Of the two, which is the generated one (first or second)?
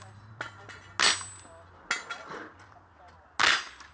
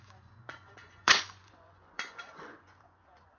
second